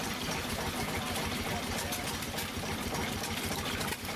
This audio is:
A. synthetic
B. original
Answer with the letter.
B